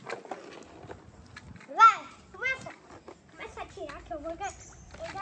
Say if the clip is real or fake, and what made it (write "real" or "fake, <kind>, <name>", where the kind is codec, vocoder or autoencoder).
real